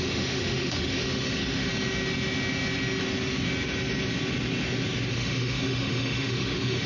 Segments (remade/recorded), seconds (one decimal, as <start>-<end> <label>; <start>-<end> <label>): 0.0-1.7 remade; 1.7-5.1 recorded; 5.1-6.9 remade